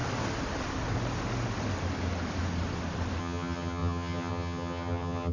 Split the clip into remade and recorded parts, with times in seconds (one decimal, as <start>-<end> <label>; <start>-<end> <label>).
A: 0.0-3.2 recorded; 3.2-5.3 remade